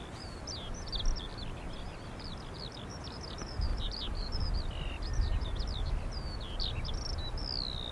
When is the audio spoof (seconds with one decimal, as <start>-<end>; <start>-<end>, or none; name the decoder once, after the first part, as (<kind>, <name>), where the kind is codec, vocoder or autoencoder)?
3.7-6.9 (vocoder, BigVGAN v2)